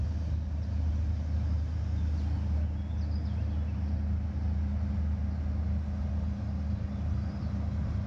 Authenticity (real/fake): real